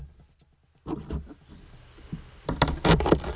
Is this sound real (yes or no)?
yes